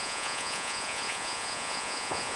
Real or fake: fake